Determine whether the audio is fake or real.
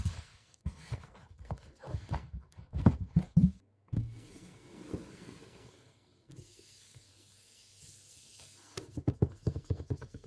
fake